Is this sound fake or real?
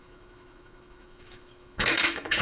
fake